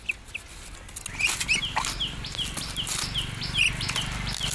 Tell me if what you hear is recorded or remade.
recorded